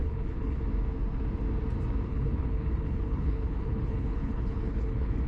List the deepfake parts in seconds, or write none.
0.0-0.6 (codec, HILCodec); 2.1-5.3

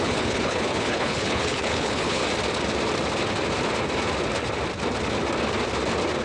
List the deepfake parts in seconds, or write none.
0.0-2.2 (codec, HILCodec)